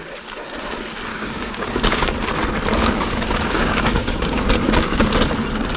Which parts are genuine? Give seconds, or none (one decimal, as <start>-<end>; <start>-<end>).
0.0-1.1; 2.1-2.8; 5.1-5.8